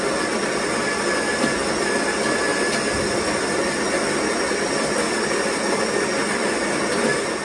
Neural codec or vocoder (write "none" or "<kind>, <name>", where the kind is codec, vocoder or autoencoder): none